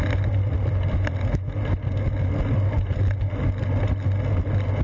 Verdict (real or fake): real